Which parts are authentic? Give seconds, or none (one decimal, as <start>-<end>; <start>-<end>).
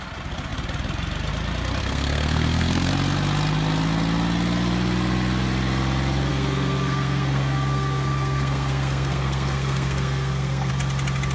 0.0-1.8; 2.9-6.3; 10.7-11.3